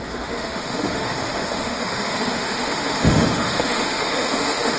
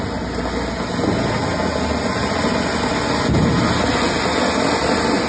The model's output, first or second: first